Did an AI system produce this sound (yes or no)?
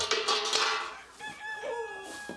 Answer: no